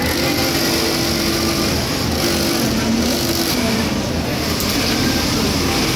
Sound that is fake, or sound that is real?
real